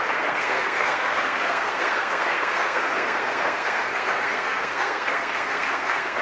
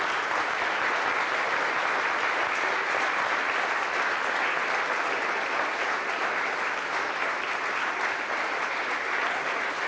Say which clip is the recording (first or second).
second